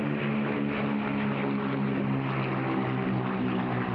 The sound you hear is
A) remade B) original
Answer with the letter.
B